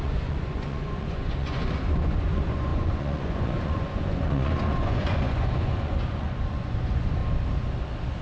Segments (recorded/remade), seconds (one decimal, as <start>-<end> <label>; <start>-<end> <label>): 0.0-7.2 remade; 7.2-8.2 recorded